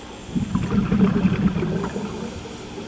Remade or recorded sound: recorded